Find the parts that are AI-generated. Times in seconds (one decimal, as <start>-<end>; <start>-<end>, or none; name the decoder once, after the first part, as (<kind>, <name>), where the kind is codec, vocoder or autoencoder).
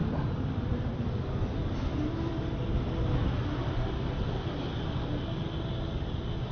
none